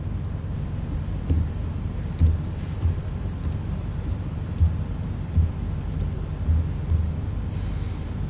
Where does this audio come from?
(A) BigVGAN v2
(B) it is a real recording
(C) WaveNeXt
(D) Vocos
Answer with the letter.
B